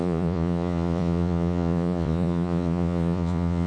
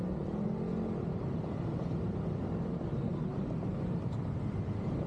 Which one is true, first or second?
second